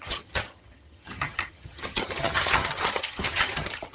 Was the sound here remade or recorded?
remade